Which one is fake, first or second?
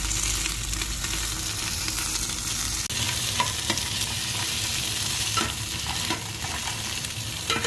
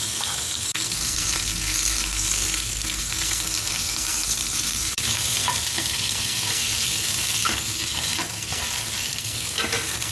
second